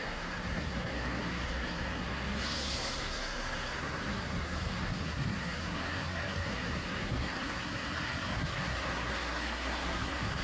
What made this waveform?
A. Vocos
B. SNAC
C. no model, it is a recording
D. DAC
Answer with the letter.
B